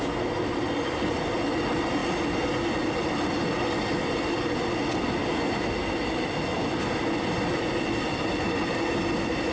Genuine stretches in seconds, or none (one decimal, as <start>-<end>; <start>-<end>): 0.0-9.5